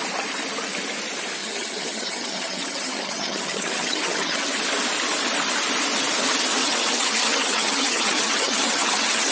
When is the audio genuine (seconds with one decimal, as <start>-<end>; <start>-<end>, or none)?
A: 0.0-1.4; 4.6-6.6